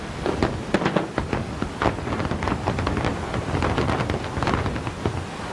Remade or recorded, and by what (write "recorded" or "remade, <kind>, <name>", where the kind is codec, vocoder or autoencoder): recorded